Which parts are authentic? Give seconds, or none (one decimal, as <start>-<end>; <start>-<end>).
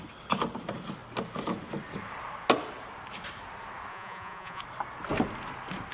0.0-3.9; 4.6-5.9